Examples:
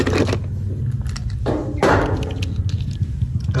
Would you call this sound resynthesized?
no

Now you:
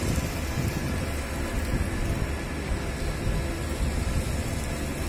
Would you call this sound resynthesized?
no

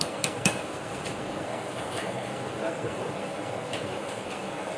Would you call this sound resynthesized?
yes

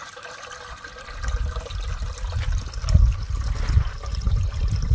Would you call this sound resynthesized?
no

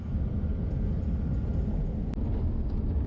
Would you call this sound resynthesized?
no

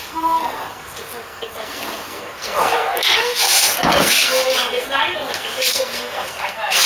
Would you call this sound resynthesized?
yes